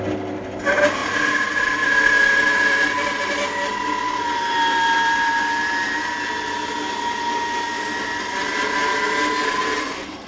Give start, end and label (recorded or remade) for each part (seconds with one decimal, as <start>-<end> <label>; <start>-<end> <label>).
0.0-10.3 recorded